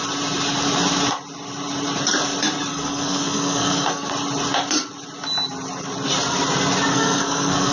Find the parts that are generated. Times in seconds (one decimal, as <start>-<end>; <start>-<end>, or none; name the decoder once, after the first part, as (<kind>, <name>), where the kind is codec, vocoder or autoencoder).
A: 2.7-4.1 (codec, SNAC); 6.9-7.7